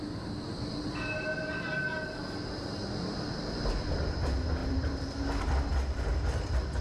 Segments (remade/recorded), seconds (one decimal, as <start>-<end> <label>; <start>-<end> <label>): 0.0-4.6 recorded; 4.6-5.6 remade; 5.6-6.8 recorded

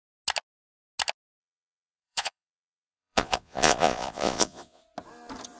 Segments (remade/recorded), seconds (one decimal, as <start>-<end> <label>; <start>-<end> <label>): 0.0-1.4 recorded; 1.4-4.8 remade; 4.8-5.6 recorded

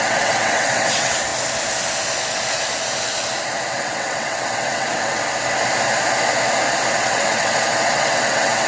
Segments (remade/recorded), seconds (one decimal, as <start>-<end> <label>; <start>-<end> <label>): 0.0-1.3 remade; 1.3-3.7 recorded; 3.7-5.2 remade; 5.2-6.9 recorded; 6.9-8.7 remade

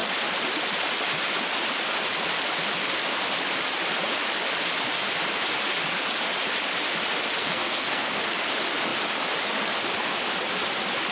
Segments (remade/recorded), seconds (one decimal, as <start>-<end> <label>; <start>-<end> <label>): 0.0-7.4 recorded; 7.4-8.2 remade; 8.2-11.1 recorded

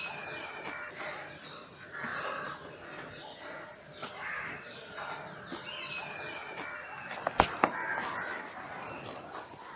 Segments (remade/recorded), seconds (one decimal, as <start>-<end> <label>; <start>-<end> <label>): 0.0-9.8 recorded

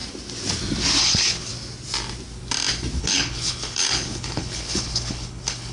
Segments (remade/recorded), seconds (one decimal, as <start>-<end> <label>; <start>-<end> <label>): 0.0-1.0 recorded; 1.0-1.5 remade; 1.5-3.0 recorded; 3.0-5.7 remade

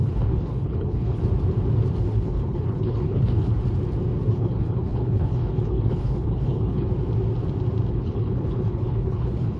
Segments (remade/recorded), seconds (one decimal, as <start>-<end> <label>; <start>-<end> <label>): 0.0-1.2 remade; 1.2-2.0 recorded; 2.0-3.5 remade; 3.5-4.3 recorded; 4.3-6.9 remade; 6.9-7.9 recorded; 7.9-9.6 remade